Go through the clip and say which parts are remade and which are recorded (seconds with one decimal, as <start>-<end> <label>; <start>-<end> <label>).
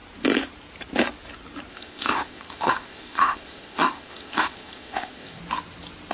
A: 0.0-1.7 recorded; 1.7-5.4 remade; 5.4-6.1 recorded